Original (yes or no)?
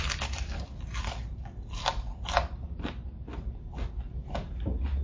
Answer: yes